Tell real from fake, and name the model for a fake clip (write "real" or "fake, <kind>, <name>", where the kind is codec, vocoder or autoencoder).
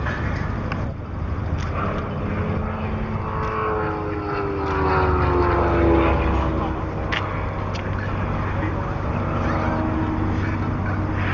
real